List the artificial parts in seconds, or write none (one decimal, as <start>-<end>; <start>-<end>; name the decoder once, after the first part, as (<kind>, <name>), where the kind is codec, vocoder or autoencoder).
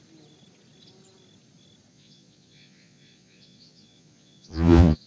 1.9-5.1 (vocoder, Vocos)